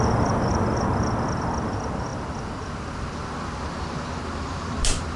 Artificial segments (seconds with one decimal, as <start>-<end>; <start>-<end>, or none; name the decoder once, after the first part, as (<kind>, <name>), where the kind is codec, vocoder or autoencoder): none